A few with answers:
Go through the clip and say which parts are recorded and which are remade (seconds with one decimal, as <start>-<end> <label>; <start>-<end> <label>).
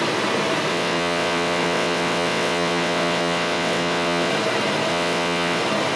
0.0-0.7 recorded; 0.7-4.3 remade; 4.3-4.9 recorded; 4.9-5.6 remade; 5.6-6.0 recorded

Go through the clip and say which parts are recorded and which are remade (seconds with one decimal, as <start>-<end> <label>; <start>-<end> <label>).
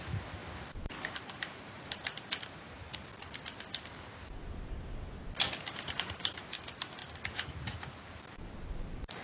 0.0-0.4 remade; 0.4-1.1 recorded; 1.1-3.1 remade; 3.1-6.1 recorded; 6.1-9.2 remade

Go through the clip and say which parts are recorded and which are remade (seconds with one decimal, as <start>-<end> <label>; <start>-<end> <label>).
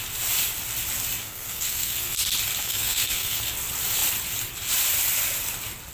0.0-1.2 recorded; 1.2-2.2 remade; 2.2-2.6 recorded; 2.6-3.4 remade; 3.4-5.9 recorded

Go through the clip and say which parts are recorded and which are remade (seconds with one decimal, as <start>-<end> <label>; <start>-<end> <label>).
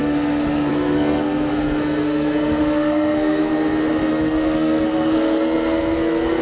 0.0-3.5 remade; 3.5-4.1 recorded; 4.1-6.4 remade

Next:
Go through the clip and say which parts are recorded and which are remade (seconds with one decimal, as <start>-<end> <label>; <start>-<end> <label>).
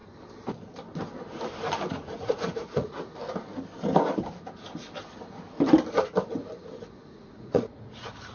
0.0-1.9 recorded; 1.9-3.2 remade; 3.2-6.9 recorded; 6.9-8.3 remade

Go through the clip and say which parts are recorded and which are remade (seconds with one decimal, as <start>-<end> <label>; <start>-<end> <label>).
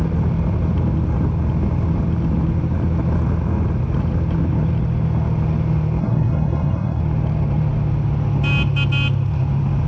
0.0-6.0 recorded; 6.0-7.0 remade; 7.0-9.9 recorded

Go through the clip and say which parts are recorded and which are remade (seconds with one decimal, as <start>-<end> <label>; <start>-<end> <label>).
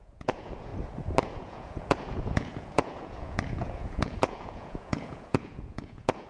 0.0-0.7 remade; 0.7-1.2 recorded; 1.2-6.3 remade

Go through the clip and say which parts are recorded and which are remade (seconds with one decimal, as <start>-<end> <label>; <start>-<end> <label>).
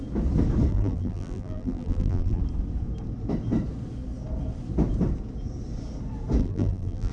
0.0-0.7 recorded; 0.7-2.4 remade; 2.4-6.4 recorded; 6.4-7.1 remade